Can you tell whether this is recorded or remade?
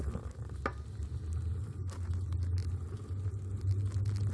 recorded